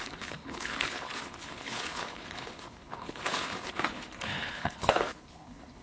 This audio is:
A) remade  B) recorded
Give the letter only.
A